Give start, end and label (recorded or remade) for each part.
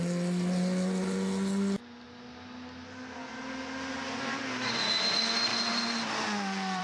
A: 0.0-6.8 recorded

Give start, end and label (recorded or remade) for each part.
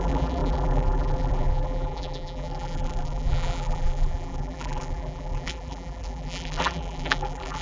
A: 0.0-7.6 remade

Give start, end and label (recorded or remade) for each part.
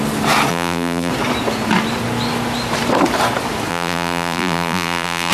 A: 0.0-0.5 recorded; 0.5-1.1 remade; 1.1-3.7 recorded; 3.7-5.3 remade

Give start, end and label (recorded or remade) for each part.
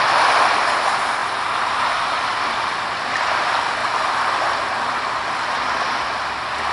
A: 0.0-1.2 recorded; 1.2-1.9 remade; 1.9-6.7 recorded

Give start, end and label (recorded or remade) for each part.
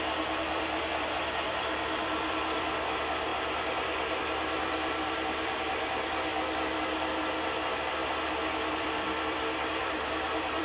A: 0.0-3.3 remade; 3.3-4.2 recorded; 4.2-6.3 remade; 6.3-7.3 recorded; 7.3-8.0 remade; 8.0-8.7 recorded; 8.7-10.6 remade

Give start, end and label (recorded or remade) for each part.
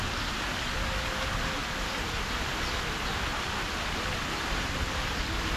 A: 0.0-1.6 recorded; 1.6-2.4 remade; 2.4-3.3 recorded; 3.3-5.6 remade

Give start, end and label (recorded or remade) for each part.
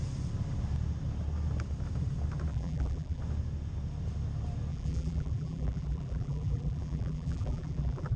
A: 0.0-2.5 recorded; 2.5-3.2 remade; 3.2-4.7 recorded; 4.7-8.2 remade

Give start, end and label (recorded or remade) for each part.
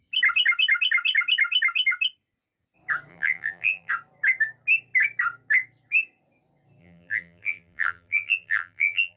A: 0.0-3.1 recorded; 3.1-3.9 remade; 3.9-6.8 recorded; 6.8-9.2 remade